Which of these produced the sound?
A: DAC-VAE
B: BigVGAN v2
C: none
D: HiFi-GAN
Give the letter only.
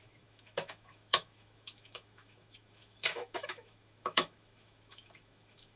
A